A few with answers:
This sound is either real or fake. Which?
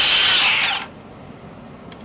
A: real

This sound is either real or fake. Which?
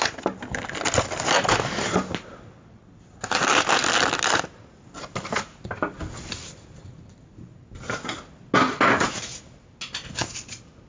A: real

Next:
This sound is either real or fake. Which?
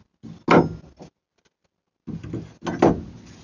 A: real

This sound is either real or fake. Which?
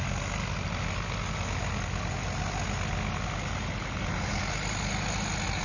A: real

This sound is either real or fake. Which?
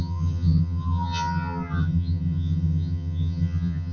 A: fake